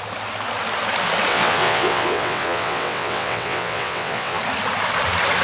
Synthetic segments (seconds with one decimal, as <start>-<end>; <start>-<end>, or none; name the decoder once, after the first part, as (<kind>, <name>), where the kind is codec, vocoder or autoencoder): 1.3-4.4 (vocoder, WaveNeXt)